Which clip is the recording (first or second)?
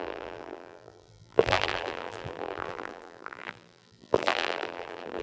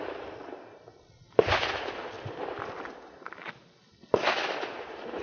second